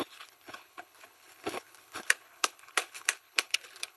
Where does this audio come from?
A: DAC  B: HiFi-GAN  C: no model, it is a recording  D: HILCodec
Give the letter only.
D